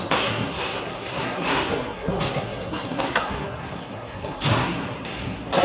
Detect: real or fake fake